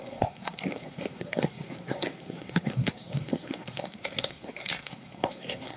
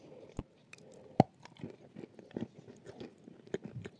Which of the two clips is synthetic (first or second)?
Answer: first